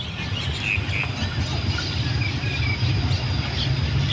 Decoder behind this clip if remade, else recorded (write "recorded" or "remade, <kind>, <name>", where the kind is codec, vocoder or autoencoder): recorded